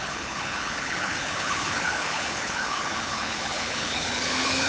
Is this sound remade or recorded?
remade